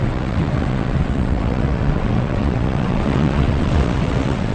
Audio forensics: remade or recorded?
remade